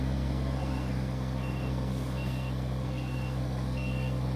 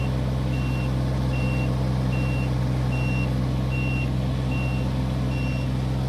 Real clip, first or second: second